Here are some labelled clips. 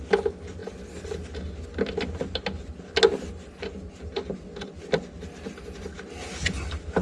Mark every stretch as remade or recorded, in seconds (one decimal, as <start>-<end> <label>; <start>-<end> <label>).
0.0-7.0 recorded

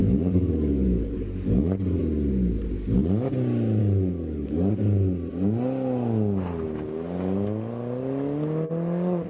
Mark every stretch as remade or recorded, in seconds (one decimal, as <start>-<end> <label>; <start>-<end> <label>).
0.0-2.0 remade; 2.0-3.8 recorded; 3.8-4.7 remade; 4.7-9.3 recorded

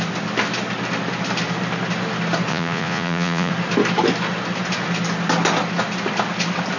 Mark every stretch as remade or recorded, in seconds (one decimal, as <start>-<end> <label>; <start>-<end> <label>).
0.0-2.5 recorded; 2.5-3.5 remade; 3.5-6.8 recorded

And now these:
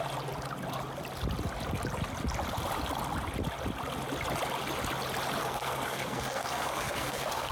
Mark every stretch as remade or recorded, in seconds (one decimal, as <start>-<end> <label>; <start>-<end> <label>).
0.0-5.4 recorded; 5.4-7.5 remade